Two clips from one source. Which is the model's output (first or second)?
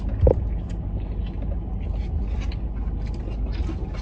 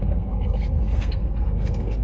second